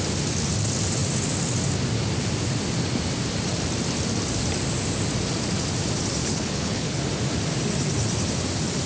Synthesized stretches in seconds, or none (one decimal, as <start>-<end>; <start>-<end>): 6.2-7.0